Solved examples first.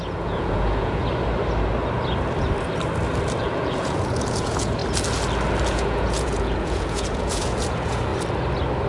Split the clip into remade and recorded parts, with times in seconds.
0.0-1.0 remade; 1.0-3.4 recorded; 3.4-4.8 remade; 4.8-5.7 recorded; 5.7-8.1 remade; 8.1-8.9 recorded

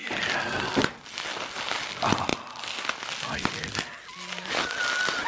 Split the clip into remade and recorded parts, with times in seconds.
0.0-5.3 recorded

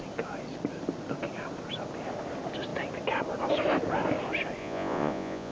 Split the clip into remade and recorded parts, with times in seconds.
0.0-4.6 recorded; 4.6-5.5 remade